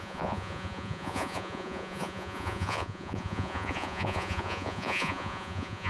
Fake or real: fake